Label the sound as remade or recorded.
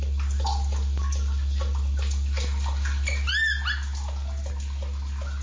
recorded